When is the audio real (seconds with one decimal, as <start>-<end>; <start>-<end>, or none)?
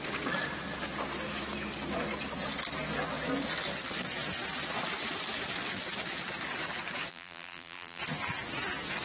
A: 0.0-7.1; 8.0-9.0